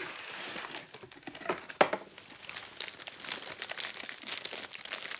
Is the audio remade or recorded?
recorded